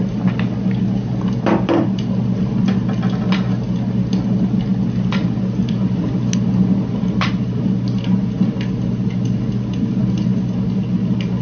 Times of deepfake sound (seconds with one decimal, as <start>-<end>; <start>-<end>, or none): none